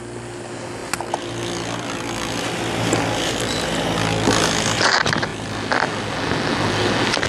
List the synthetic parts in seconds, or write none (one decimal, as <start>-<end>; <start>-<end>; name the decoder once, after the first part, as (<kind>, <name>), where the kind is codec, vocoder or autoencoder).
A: none